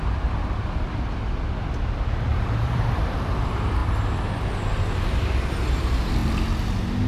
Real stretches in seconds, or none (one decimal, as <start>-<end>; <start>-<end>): 0.0-2.3; 3.3-7.1